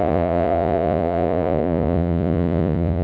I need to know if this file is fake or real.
fake